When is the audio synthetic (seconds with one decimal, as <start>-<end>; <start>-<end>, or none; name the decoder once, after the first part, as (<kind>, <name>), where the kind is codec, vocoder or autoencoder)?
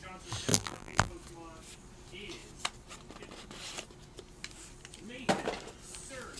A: 0.5-1.1 (vocoder, BigVGAN v2)